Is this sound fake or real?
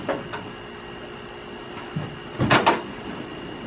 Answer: real